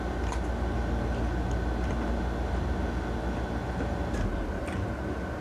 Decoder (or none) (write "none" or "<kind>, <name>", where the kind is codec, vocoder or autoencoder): none